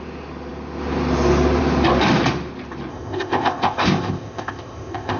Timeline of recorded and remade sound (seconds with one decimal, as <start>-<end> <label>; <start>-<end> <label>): 0.0-2.9 recorded; 2.9-5.2 remade